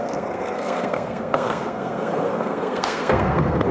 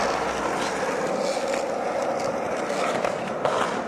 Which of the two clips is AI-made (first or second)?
first